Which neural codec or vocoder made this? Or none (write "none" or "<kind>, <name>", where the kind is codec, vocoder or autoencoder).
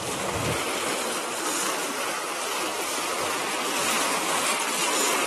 none